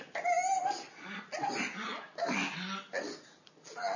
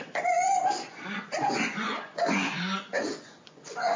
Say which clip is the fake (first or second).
second